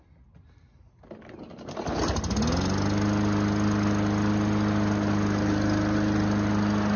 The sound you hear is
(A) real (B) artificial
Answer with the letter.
A